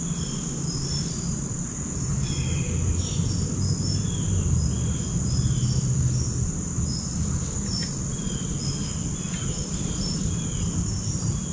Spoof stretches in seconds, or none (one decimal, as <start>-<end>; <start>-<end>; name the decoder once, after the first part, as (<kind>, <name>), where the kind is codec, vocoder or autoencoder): none